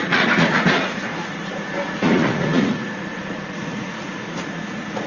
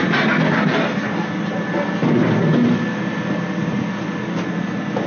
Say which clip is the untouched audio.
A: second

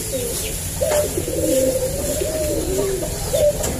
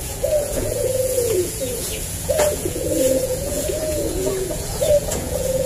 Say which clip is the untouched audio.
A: first